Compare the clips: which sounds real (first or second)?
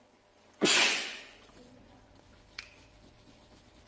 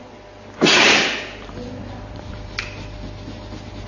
second